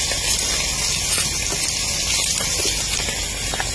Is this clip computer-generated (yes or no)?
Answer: no